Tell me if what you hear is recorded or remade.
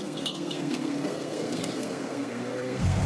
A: remade